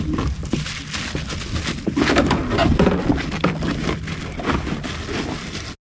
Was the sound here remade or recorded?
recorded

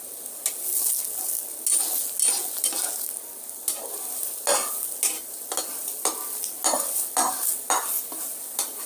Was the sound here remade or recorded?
recorded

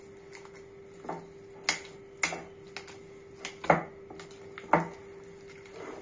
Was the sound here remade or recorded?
recorded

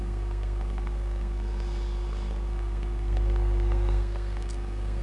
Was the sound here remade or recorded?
remade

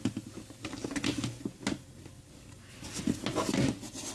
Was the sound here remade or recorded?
recorded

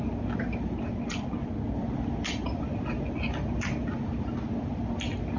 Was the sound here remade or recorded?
recorded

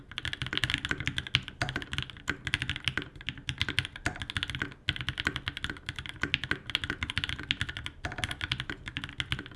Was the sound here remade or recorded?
recorded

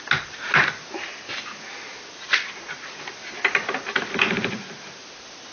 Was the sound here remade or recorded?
recorded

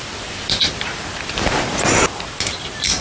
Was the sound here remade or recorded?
recorded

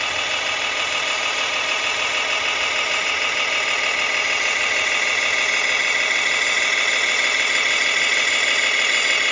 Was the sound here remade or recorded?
recorded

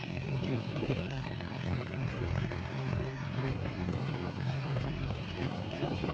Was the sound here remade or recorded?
remade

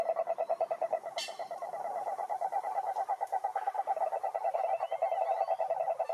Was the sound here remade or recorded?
recorded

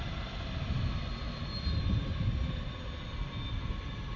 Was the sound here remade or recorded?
recorded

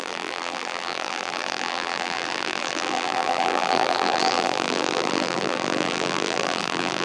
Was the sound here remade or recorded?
remade